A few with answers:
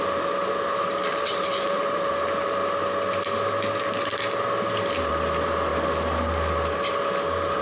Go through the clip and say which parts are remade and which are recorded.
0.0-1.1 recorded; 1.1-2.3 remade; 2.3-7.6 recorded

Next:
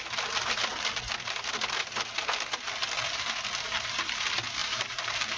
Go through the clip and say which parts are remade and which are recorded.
0.0-4.6 recorded; 4.6-5.4 remade

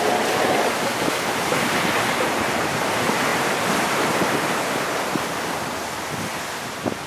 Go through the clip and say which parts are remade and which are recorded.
0.0-7.1 recorded

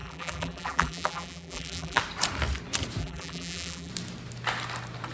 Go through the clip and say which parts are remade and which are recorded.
0.0-2.0 remade; 2.0-3.0 recorded; 3.0-3.9 remade; 3.9-5.1 recorded

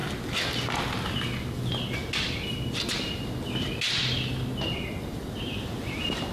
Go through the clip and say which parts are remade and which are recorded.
0.0-6.3 recorded

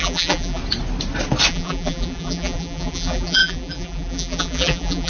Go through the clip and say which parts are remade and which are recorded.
0.0-0.6 remade; 0.6-1.5 recorded; 1.5-5.1 remade

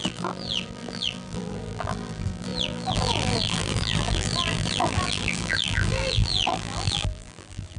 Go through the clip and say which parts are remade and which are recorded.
0.0-7.8 remade